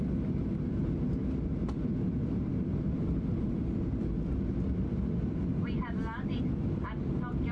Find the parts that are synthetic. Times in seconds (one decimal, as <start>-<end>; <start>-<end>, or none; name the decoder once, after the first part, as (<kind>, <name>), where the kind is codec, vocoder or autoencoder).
none